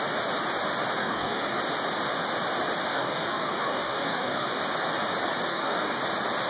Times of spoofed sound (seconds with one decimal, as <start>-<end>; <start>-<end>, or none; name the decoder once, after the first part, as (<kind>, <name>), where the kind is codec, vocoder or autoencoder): 1.0-1.6 (codec, DAC); 2.9-4.6; 5.5-6.0

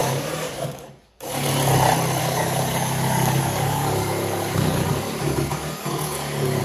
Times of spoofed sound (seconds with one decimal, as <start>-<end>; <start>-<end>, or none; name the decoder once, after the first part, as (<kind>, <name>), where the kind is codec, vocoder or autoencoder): 0.0-1.5 (codec, DAC); 2.2-6.6

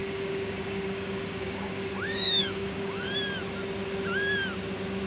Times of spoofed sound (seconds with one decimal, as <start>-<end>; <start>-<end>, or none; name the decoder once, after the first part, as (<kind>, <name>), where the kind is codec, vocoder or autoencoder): 0.0-3.1 (codec, DAC)

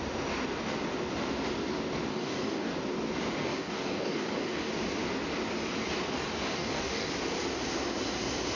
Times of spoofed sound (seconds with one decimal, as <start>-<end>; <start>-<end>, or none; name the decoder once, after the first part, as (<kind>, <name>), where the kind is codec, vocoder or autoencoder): 2.1-2.7 (codec, DAC); 3.4-4.7; 6.5-7.1

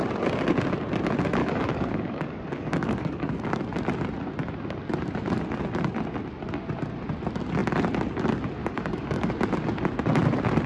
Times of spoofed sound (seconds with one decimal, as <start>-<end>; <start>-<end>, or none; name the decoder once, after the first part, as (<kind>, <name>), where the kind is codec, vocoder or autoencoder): 1.4-3.5 (codec, DAC); 8.6-9.3